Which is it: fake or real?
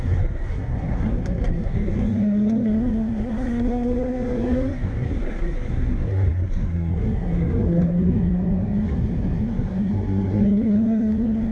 fake